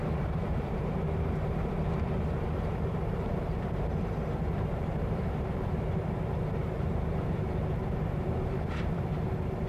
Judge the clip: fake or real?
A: fake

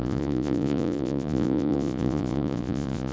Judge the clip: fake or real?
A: fake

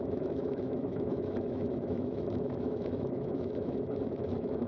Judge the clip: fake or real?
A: fake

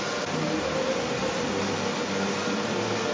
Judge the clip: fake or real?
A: real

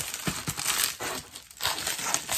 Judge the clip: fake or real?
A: real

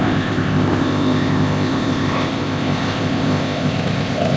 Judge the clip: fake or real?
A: fake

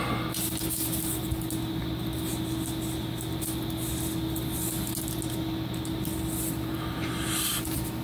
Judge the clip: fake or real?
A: real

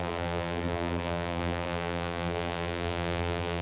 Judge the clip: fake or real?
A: fake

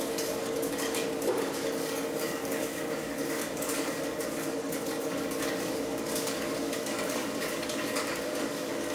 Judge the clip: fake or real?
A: fake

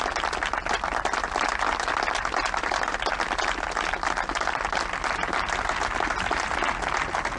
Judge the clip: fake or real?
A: real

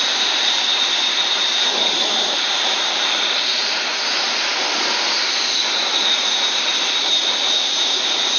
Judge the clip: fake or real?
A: fake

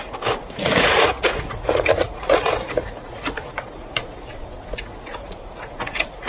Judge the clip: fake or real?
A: fake